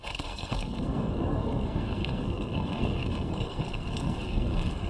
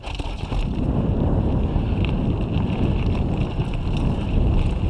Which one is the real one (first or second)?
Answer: second